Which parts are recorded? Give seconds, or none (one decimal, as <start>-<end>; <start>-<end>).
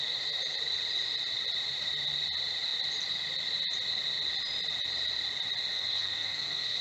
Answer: 0.0-5.7